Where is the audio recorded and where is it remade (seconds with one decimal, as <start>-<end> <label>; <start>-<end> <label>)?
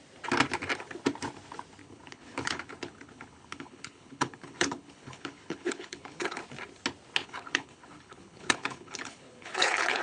0.0-1.8 recorded; 1.8-6.4 remade; 6.4-7.2 recorded; 7.2-10.0 remade